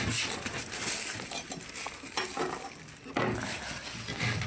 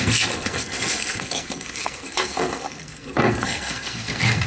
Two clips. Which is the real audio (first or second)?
first